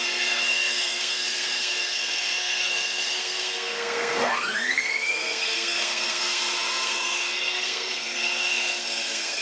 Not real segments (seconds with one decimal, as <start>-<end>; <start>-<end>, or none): 0.0-9.4